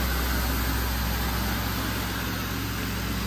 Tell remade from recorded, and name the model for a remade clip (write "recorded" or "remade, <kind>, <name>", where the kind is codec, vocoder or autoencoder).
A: recorded